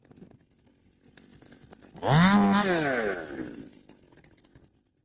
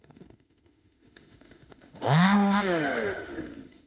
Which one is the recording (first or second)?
first